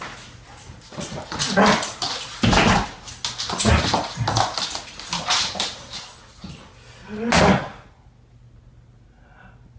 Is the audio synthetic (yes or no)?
no